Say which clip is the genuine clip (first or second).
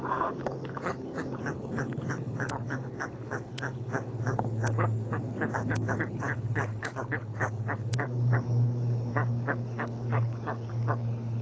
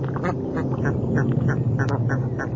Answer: second